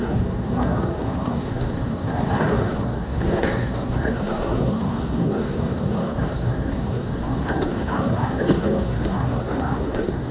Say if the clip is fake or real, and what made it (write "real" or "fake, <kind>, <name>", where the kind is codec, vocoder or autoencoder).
fake, codec, SNAC